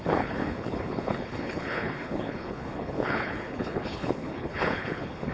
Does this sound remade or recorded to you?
remade